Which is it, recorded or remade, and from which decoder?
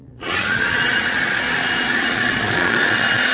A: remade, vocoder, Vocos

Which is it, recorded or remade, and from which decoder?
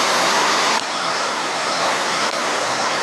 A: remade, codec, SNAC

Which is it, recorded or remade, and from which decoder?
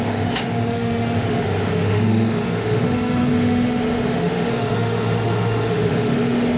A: remade, autoencoder, DAC-VAE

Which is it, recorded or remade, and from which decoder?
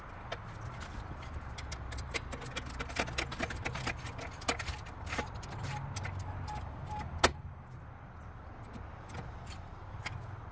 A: recorded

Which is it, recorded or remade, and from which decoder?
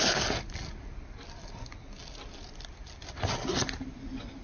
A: recorded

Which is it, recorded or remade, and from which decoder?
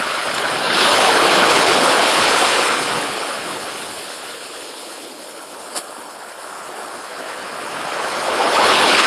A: remade, codec, HILCodec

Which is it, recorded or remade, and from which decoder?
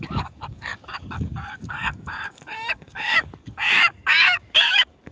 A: remade, codec, DAC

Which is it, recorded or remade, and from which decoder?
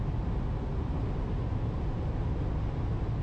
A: recorded